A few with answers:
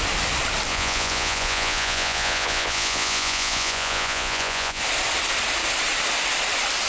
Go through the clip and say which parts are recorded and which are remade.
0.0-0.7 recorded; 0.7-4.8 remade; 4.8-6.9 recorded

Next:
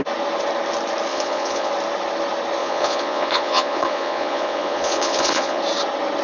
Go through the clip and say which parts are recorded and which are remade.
0.0-1.1 recorded; 1.1-1.7 remade; 1.7-2.6 recorded; 2.6-5.6 remade; 5.6-6.2 recorded

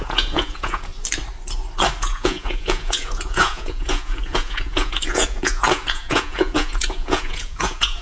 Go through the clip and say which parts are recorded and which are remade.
0.0-0.9 remade; 0.9-2.0 recorded; 2.0-8.0 remade

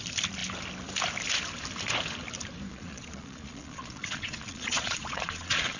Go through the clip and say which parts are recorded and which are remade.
0.0-2.7 recorded; 2.7-5.8 remade